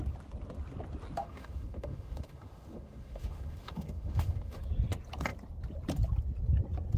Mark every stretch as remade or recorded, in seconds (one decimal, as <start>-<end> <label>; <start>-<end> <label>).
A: 0.0-1.2 recorded; 1.2-4.6 remade; 4.6-7.0 recorded

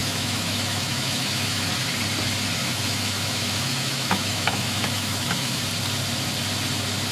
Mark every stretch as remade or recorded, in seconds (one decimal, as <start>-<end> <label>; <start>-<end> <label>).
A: 0.0-1.7 remade; 1.7-2.6 recorded; 2.6-5.6 remade; 5.6-7.1 recorded